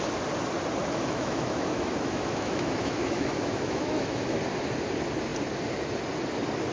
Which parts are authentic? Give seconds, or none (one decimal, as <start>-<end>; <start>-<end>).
0.0-0.8; 4.4-6.7